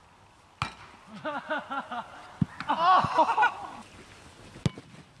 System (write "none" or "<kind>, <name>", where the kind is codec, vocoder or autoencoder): none